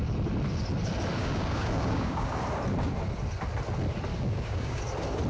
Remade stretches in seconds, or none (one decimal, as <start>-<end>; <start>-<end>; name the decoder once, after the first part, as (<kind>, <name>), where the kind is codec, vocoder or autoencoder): 1.2-2.4 (codec, DAC); 4.1-4.8